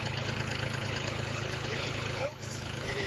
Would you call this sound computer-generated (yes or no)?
yes